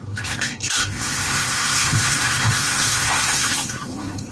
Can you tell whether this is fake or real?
fake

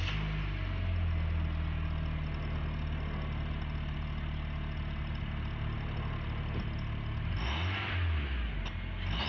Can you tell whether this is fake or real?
real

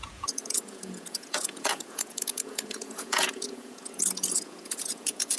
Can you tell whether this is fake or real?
fake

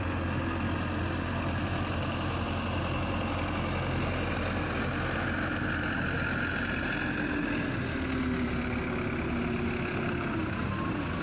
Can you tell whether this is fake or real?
real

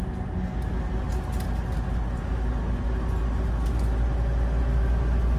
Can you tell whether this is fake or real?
real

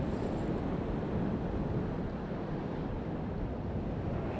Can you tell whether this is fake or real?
real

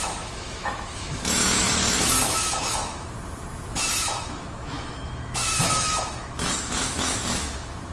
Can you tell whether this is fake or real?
fake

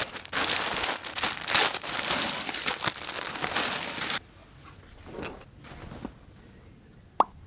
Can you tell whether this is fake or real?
real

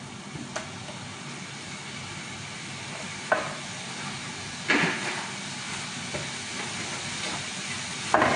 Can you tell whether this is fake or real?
real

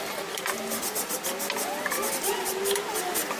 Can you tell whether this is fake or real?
real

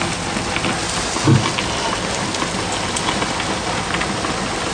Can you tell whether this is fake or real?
real